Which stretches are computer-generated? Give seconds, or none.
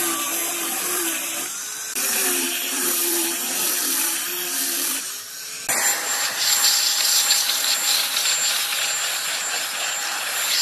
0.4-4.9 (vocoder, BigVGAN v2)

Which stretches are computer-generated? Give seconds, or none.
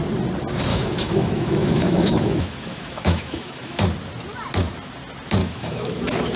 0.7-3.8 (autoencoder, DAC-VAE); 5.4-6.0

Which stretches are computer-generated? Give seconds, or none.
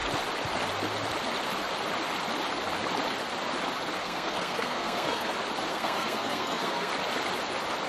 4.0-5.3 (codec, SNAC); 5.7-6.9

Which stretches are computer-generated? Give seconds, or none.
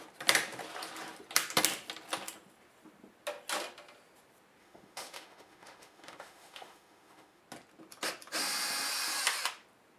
4.6-7.4 (autoencoder, DAC-VAE)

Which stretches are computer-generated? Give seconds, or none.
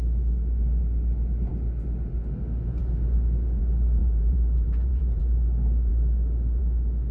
4.0-5.2 (vocoder, BigVGAN v2)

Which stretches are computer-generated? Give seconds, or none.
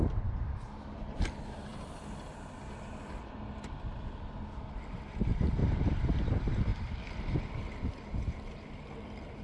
none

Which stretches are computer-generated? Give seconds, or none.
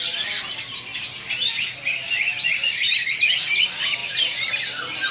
0.0-0.9 (vocoder, BigVGAN v2); 2.3-5.1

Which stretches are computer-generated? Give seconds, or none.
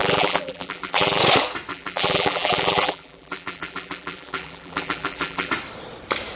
0.0-1.2 (vocoder, BigVGAN v2); 1.7-5.5